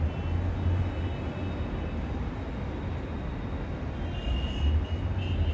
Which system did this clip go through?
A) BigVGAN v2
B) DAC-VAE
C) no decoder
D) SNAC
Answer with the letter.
C